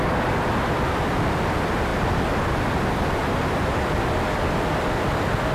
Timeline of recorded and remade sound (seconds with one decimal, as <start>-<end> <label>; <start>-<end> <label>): 0.0-5.5 recorded